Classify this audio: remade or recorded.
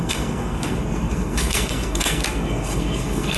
remade